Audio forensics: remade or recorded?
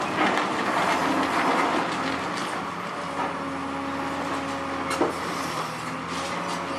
recorded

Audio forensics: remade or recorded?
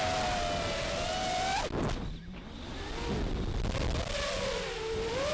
recorded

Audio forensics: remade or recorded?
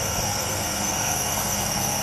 remade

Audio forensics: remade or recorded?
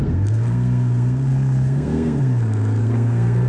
remade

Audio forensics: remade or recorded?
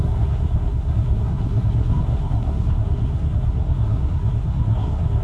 remade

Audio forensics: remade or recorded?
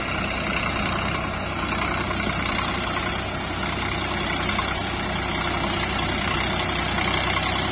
recorded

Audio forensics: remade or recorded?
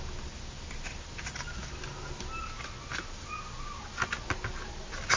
recorded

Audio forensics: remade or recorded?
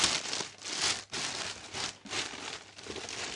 recorded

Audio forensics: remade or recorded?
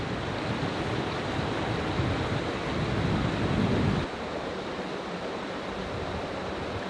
recorded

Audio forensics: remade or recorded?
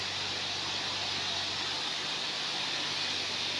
recorded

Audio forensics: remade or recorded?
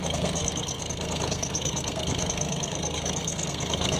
remade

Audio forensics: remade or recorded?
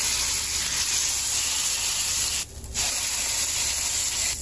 recorded